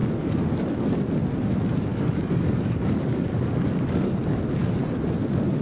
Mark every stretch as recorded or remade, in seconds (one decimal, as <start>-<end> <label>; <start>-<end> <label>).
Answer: 0.0-1.9 recorded; 1.9-4.4 remade; 4.4-5.6 recorded